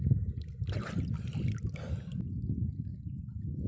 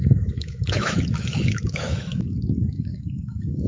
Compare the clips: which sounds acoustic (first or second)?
first